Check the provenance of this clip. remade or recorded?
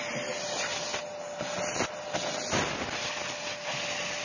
recorded